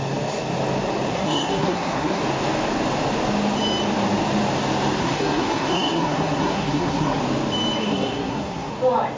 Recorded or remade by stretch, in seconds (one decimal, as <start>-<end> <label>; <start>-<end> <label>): 0.0-1.1 recorded; 1.1-2.2 remade; 2.2-5.0 recorded; 5.0-7.2 remade; 7.2-7.8 recorded; 7.8-8.7 remade; 8.7-9.2 recorded

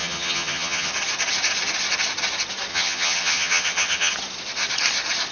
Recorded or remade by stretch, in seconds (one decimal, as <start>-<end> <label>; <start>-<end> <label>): 0.0-0.9 remade; 0.9-2.7 recorded; 2.7-4.1 remade; 4.1-5.3 recorded

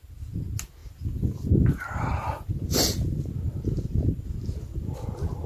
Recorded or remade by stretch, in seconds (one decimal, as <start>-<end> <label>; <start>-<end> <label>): 0.0-5.5 recorded

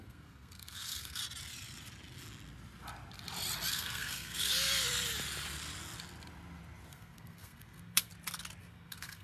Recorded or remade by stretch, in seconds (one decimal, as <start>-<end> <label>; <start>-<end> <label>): 0.0-1.2 remade; 1.2-3.7 recorded; 3.7-4.5 remade; 4.5-6.9 recorded; 6.9-8.1 remade; 8.1-8.6 recorded; 8.6-9.2 remade

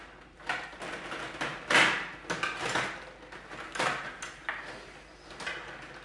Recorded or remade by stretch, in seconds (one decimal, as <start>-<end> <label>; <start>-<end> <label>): 0.0-6.0 recorded

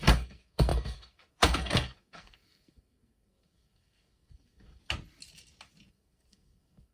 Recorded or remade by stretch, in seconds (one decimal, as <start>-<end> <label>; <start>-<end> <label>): 0.0-4.8 remade; 4.8-5.9 recorded; 5.9-6.9 remade

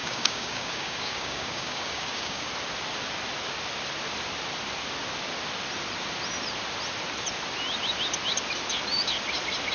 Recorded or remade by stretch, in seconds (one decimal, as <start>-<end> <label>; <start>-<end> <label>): 0.0-2.5 remade; 2.5-9.7 recorded

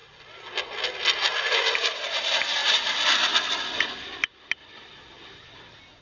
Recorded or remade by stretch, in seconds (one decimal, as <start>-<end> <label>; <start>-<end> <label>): 0.0-6.0 recorded